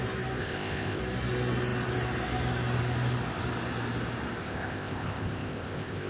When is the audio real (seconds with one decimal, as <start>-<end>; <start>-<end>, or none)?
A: 0.0-0.4; 1.0-4.4